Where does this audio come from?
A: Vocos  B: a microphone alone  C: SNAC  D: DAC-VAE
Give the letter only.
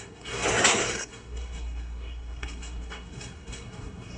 C